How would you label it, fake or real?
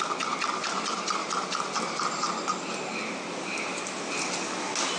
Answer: real